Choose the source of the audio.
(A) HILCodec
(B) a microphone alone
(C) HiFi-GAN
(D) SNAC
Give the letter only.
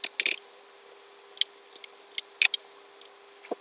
B